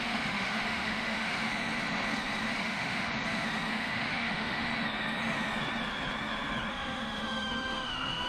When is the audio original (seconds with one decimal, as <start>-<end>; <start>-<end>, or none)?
1.3-2.6; 3.1-3.7; 4.7-6.7